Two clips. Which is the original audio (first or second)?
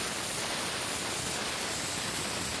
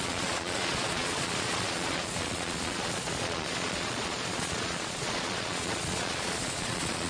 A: first